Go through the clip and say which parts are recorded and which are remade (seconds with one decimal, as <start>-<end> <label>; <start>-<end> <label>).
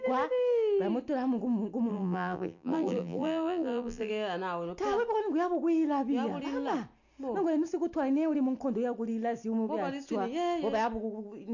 0.0-1.9 recorded; 1.9-4.1 remade; 4.1-11.5 recorded